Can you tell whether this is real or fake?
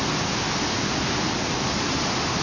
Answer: real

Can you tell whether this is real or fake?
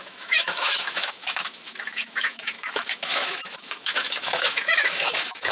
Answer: fake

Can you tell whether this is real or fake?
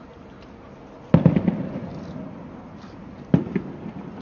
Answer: real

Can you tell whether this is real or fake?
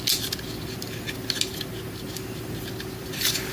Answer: real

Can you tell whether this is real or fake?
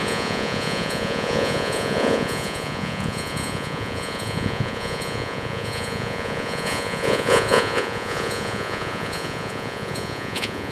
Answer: fake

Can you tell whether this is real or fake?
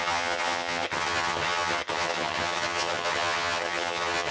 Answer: fake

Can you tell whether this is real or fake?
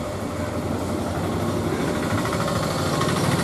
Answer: real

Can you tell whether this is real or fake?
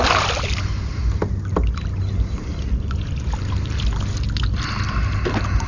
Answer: real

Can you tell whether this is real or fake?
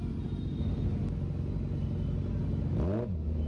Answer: real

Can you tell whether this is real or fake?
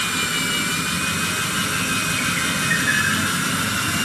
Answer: real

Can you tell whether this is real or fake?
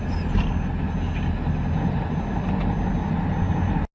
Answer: real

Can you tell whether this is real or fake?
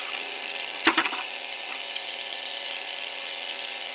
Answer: fake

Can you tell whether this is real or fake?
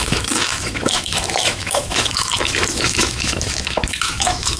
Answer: fake